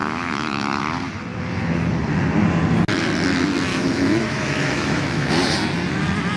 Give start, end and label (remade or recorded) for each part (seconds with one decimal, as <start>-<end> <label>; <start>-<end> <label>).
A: 0.0-0.8 remade; 0.8-3.7 recorded; 3.7-5.3 remade; 5.3-6.4 recorded